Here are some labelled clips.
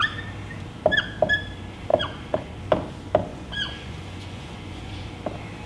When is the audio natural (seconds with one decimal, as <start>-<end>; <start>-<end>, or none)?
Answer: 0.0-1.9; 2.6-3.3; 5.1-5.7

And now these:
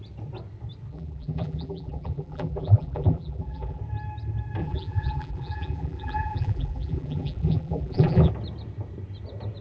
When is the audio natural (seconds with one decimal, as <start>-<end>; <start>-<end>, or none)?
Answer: 0.0-0.9; 3.8-4.6; 8.3-9.6

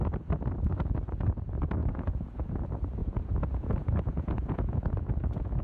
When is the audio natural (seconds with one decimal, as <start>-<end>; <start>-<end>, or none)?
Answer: 0.0-1.8; 2.5-3.0